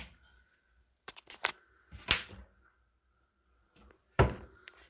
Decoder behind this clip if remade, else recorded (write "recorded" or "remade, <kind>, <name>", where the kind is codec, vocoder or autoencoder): remade, vocoder, BigVGAN v2